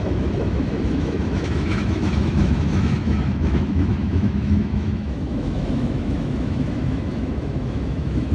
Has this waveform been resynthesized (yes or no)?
yes